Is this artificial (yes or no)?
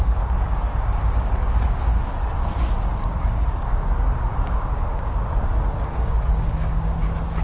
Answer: yes